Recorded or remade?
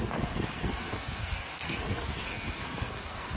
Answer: remade